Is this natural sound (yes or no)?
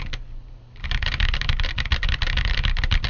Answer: yes